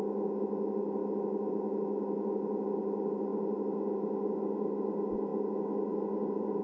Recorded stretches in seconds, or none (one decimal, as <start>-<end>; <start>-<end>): 0.0-6.6